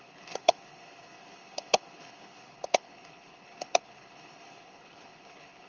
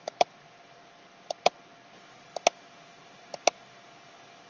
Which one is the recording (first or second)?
second